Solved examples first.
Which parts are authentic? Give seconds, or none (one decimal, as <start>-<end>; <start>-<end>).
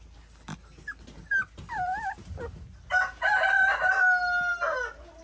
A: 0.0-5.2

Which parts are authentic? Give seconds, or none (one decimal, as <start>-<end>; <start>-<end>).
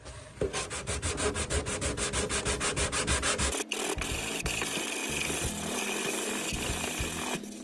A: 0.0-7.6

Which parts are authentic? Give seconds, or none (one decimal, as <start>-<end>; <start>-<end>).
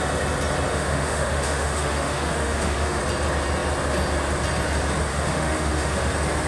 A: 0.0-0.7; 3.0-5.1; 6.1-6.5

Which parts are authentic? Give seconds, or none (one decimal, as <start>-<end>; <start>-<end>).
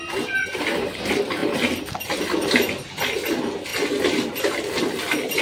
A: 0.0-5.4